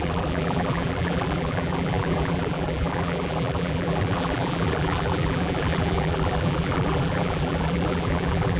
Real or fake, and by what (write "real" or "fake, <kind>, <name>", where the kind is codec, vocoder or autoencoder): fake, vocoder, BigVGAN v2